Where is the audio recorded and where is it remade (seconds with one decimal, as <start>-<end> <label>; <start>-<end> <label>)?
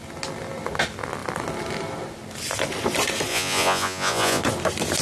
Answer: 0.0-3.3 recorded; 3.3-4.4 remade; 4.4-5.0 recorded